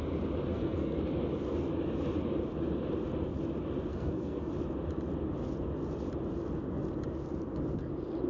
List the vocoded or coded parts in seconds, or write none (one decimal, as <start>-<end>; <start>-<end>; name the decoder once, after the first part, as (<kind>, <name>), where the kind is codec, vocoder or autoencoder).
0.5-1.0 (codec, SNAC); 3.9-4.5